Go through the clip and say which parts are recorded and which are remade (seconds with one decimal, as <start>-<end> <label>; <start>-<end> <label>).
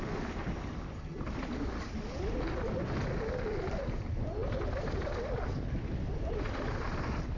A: 0.0-7.4 recorded